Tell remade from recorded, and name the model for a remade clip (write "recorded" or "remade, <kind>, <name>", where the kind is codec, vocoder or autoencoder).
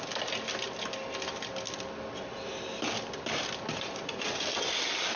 recorded